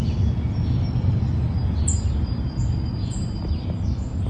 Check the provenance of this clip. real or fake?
real